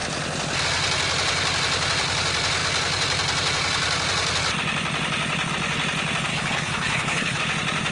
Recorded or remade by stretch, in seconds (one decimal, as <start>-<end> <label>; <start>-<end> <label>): 0.0-6.3 recorded; 6.3-7.4 remade; 7.4-7.9 recorded